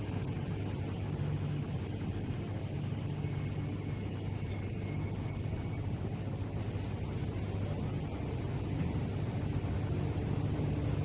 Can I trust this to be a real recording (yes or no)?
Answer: yes